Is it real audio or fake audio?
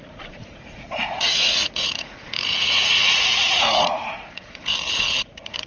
fake